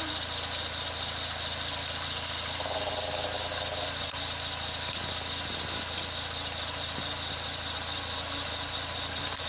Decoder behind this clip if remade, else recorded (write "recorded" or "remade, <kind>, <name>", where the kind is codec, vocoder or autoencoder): recorded